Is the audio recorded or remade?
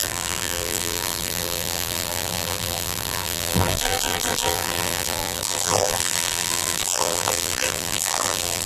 remade